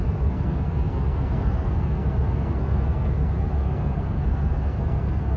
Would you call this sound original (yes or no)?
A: no